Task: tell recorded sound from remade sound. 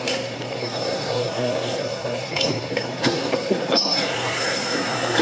remade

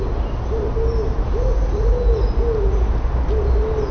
recorded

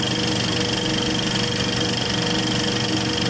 recorded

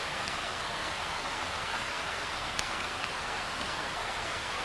remade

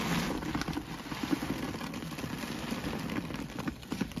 recorded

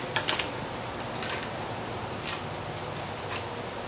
recorded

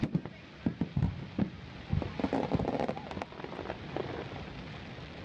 recorded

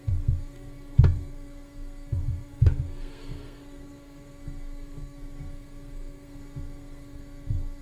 remade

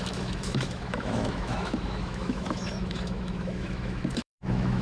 remade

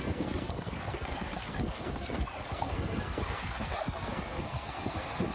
remade